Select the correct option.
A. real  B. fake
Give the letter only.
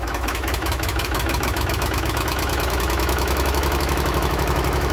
B